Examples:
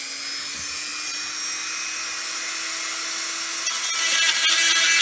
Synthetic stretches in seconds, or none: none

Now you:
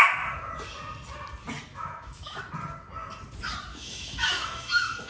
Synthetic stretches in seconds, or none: 1.7-2.4; 3.7-5.1

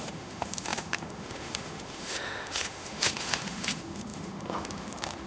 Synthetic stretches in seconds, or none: 0.0-5.3

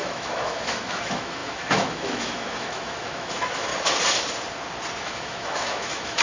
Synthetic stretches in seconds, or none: 0.0-3.7; 5.0-6.2

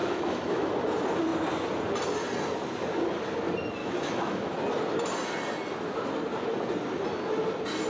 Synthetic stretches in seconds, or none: 0.0-0.7; 3.8-4.6